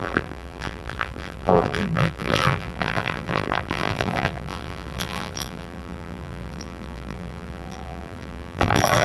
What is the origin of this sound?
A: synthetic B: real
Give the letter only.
A